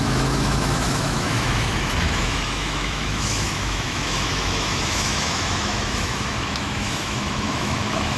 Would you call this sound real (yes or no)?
no